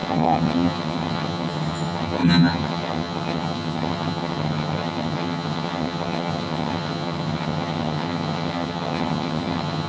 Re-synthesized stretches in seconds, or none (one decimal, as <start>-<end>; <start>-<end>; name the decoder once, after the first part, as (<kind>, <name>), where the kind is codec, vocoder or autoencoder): 0.0-9.9 (vocoder, HiFi-GAN)